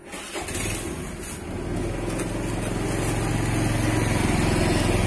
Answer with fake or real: real